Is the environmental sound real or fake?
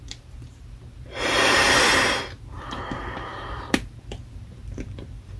fake